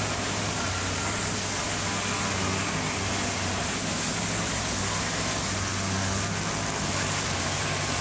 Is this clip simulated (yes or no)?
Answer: no